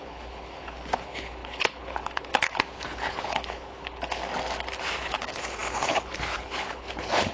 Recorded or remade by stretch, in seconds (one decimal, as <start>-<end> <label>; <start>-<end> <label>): 0.0-4.2 remade; 4.2-5.0 recorded; 5.0-7.3 remade